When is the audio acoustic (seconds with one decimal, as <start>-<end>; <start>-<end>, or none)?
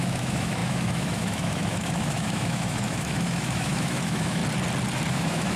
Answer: 4.4-5.1